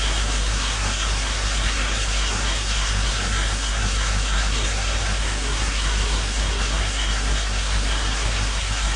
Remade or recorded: remade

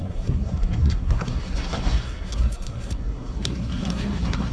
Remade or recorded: remade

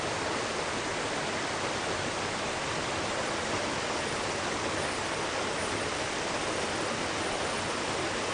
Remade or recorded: recorded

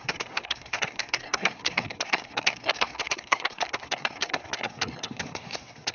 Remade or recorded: remade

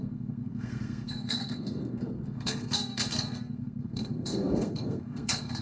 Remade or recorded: remade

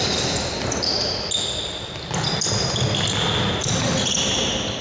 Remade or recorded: recorded